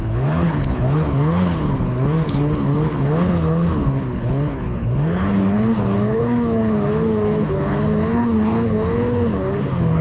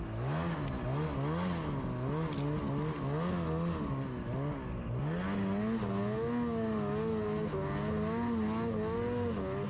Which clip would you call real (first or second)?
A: second